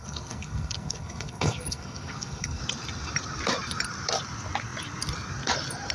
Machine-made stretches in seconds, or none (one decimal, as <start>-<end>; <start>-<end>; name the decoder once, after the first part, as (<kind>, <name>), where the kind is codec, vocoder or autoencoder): 0.0-2.6 (codec, SNAC)